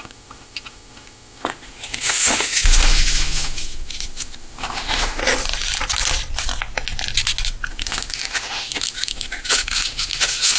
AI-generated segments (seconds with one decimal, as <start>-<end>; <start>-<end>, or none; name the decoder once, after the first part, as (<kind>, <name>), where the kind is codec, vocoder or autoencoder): 0.0-5.2 (autoencoder, DAC-VAE); 7.7-10.6